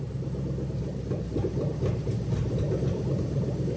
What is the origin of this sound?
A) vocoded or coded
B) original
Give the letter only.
B